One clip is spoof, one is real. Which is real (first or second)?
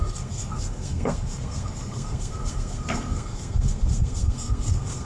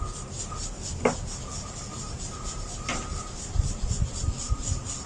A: second